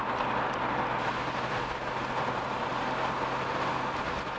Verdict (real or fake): real